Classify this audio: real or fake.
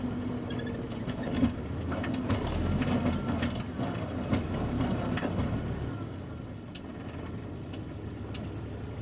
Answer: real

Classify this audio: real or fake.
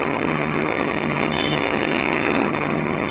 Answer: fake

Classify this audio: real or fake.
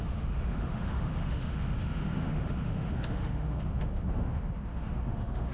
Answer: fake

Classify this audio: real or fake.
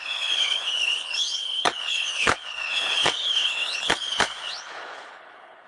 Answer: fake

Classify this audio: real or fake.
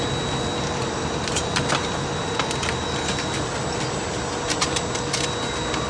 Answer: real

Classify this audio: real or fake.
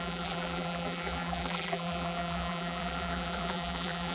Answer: fake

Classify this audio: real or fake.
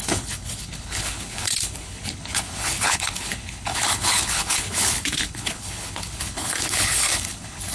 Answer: fake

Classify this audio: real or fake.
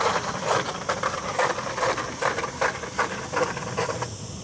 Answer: real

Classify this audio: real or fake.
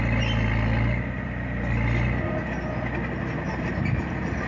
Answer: real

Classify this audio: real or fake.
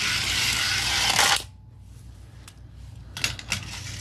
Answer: real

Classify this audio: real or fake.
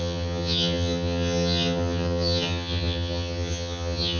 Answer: fake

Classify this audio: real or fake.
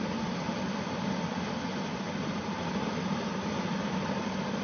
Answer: real